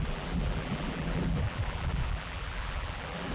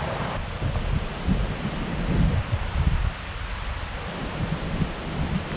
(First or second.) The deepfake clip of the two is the first